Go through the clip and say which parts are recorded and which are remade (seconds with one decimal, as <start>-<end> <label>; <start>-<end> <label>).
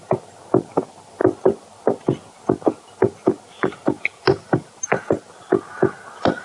0.0-6.4 recorded